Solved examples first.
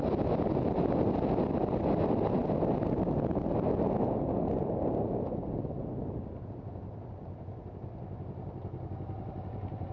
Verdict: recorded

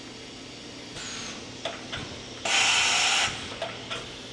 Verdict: recorded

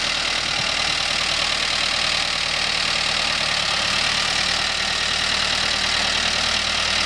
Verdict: recorded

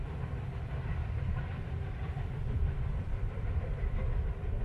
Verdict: remade